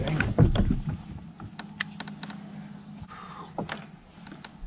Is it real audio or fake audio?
real